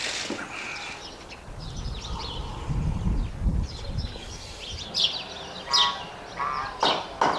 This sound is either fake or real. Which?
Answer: real